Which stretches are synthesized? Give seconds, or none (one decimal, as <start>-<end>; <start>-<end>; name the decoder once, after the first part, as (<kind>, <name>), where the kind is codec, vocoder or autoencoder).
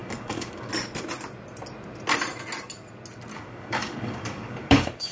0.0-0.7 (codec, DAC); 3.3-5.1